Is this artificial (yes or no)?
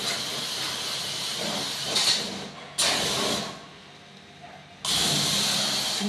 no